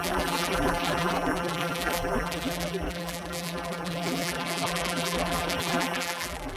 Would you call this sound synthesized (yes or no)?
yes